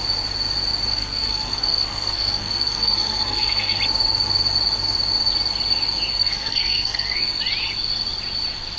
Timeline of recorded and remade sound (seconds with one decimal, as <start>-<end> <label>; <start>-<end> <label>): 0.0-0.9 recorded; 0.9-3.8 remade; 3.8-6.1 recorded; 6.1-7.4 remade; 7.4-8.8 recorded